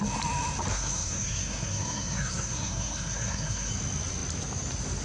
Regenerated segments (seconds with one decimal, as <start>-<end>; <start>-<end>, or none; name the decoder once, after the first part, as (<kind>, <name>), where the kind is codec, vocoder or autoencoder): 0.7-3.7 (codec, SNAC)